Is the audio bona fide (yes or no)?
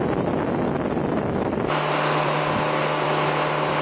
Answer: yes